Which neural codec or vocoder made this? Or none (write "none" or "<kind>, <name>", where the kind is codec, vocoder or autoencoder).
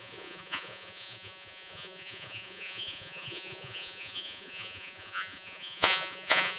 vocoder, Vocos